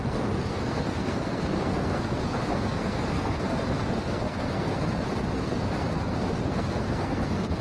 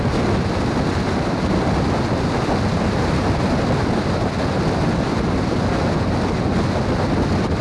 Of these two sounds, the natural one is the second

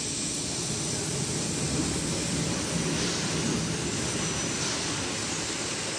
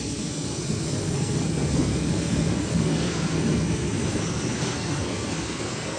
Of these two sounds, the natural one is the first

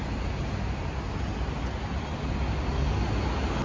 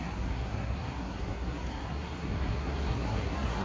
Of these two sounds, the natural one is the first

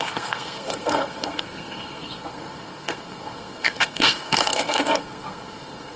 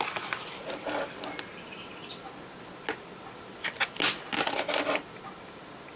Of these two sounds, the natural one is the second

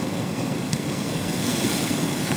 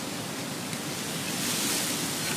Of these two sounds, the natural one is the second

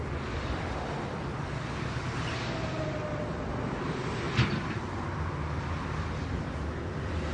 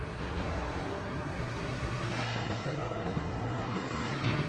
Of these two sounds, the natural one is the first